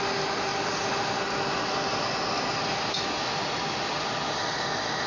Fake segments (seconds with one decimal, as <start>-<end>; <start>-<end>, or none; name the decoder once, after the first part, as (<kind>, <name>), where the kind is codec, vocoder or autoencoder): none